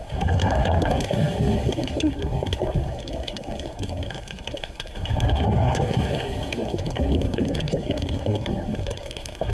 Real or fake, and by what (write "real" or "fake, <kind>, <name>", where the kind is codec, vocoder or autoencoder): fake, codec, SNAC